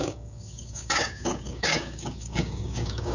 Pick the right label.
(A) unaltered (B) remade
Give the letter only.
B